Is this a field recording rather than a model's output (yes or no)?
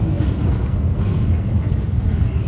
no